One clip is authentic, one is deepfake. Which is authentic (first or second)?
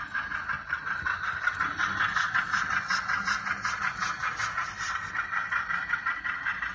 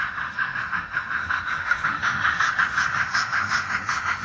first